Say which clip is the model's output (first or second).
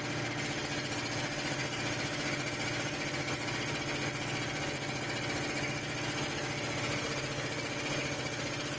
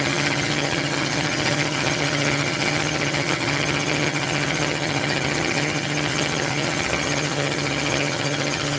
second